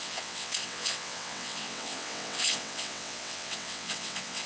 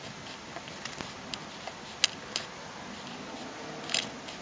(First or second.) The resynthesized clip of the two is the first